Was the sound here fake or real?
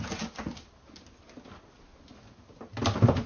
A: real